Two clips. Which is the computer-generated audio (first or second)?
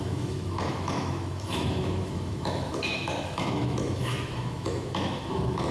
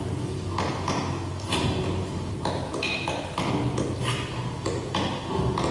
first